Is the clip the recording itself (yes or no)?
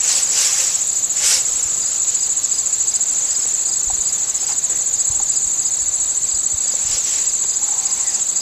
yes